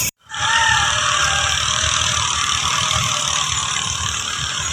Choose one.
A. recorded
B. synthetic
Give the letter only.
B